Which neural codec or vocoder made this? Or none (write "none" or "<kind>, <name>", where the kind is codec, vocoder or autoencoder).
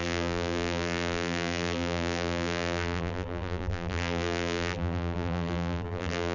vocoder, BigVGAN v2